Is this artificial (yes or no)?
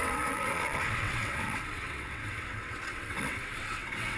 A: yes